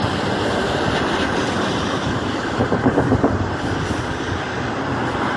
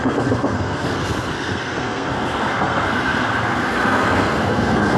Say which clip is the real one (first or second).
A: first